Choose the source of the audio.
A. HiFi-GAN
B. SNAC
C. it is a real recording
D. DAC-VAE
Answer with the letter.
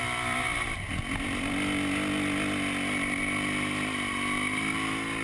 C